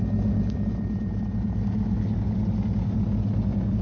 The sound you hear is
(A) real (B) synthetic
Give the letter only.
A